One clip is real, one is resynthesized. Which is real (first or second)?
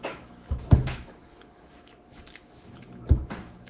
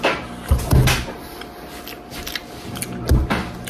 second